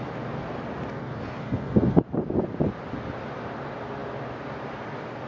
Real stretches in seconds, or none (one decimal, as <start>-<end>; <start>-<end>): 0.0-5.3